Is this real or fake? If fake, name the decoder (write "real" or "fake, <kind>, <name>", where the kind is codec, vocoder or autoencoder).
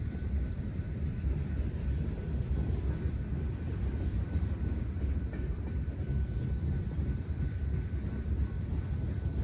fake, vocoder, BigVGAN v2